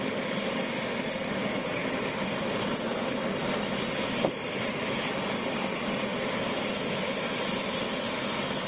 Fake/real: real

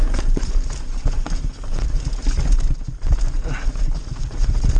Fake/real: real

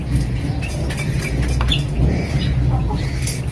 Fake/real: real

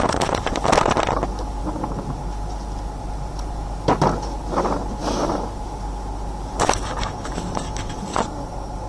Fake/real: real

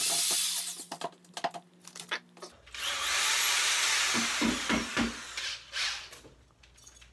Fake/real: real